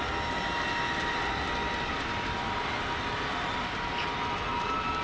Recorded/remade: recorded